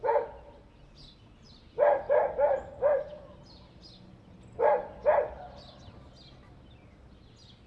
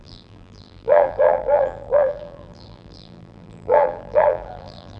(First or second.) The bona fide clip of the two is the first